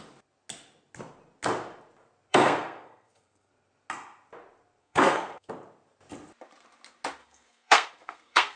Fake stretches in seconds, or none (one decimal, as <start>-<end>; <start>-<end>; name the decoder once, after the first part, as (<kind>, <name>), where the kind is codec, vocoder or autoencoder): 2.3-3.5 (codec, SNAC); 4.8-5.5; 7.2-8.6